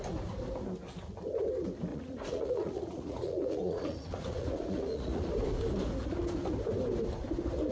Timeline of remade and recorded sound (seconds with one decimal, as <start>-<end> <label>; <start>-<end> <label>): 0.0-1.9 recorded; 1.9-5.3 remade; 5.3-7.7 recorded